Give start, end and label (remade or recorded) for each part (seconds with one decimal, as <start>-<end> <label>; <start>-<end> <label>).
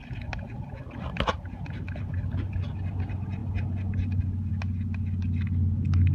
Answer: 0.0-6.1 recorded